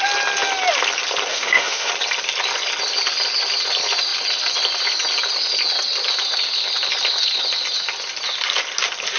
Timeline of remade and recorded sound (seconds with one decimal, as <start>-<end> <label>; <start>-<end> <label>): 0.0-1.3 recorded; 1.3-1.9 remade; 1.9-9.2 recorded